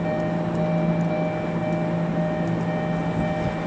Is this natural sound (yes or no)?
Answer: yes